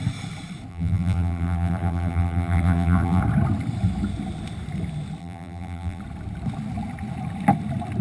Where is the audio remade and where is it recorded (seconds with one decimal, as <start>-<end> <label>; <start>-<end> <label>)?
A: 0.0-0.7 recorded; 0.7-3.2 remade; 3.2-5.2 recorded; 5.2-6.0 remade; 6.0-8.0 recorded